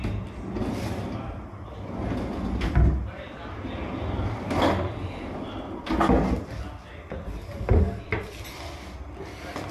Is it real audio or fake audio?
real